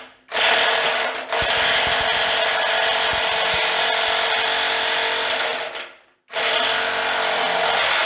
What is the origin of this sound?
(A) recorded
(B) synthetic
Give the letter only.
A